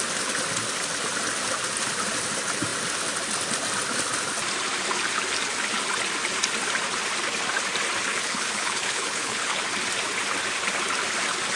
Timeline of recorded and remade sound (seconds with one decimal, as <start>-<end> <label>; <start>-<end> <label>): 0.0-8.1 recorded; 8.1-9.6 remade; 9.6-11.6 recorded